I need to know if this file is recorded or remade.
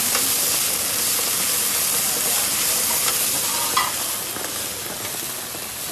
recorded